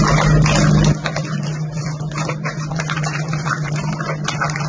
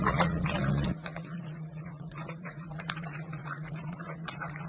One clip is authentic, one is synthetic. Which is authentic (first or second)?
first